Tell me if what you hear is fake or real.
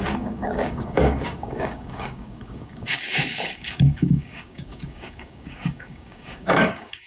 fake